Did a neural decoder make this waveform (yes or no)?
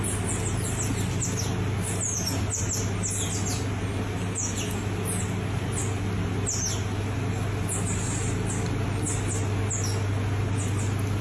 no